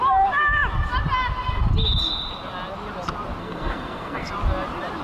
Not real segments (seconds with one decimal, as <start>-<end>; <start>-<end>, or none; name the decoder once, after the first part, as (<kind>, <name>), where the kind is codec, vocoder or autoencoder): 3.4-4.3 (codec, SNAC)